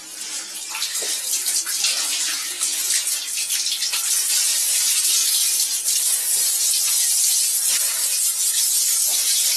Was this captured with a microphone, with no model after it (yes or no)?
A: yes